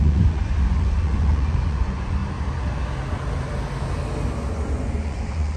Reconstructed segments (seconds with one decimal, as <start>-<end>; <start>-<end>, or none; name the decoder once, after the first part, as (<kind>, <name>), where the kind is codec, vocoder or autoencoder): 0.0-2.2 (vocoder, Vocos); 4.5-5.6